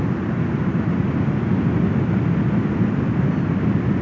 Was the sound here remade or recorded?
recorded